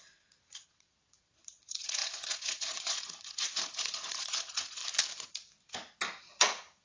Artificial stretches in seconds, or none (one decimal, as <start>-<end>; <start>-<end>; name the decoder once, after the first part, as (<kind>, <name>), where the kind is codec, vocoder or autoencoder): 0.0-4.8 (vocoder, Vocos); 6.2-6.8